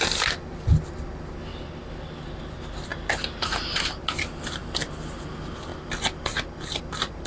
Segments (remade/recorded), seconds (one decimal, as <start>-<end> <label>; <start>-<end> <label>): 0.0-7.3 recorded